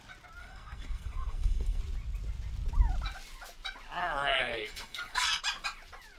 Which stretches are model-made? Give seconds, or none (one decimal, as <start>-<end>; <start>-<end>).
0.4-1.8; 4.0-5.4